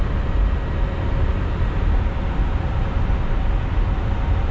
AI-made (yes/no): no